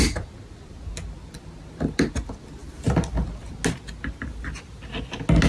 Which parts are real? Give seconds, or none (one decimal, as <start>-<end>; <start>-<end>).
0.0-5.5